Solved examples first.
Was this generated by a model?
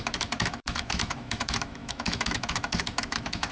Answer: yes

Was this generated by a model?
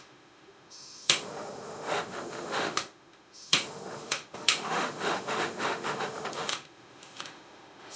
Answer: yes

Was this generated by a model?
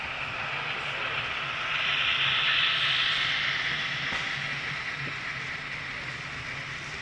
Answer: no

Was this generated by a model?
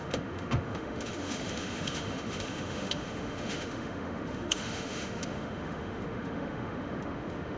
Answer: yes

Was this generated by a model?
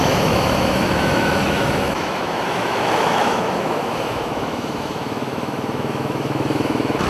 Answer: yes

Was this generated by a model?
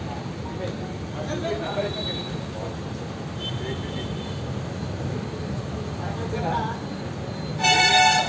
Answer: no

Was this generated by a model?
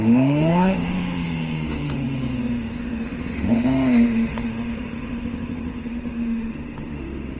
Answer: yes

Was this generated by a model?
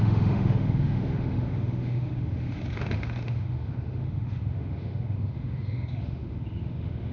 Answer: yes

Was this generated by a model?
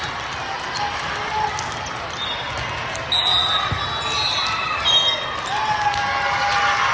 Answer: no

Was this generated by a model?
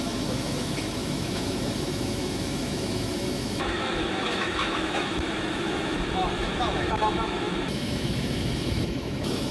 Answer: yes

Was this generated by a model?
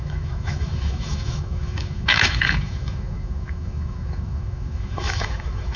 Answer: yes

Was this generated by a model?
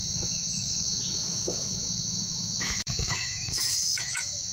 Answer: yes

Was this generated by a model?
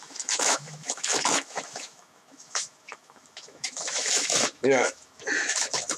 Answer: yes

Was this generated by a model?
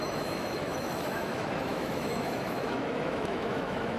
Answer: yes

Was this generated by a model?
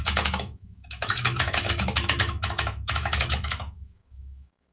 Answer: yes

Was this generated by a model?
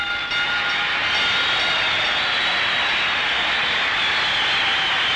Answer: no